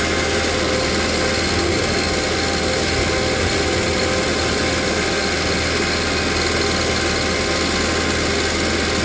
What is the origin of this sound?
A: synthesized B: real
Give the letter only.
B